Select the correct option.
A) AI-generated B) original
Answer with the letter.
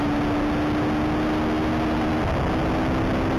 B